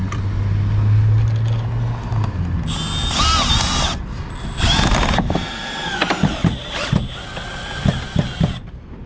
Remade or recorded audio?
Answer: recorded